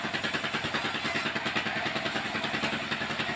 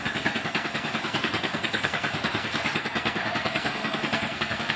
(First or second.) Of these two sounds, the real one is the first